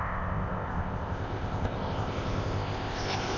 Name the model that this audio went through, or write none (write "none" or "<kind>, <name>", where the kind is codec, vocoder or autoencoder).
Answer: codec, ZipCodec